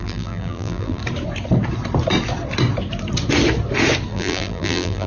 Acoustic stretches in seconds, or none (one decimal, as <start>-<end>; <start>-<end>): 1.0-4.1